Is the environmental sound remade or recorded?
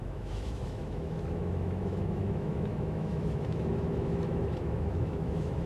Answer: remade